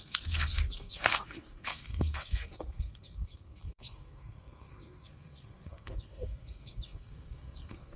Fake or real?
fake